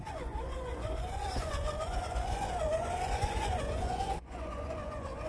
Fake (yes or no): yes